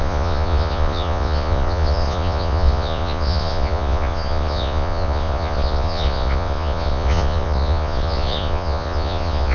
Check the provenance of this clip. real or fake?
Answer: fake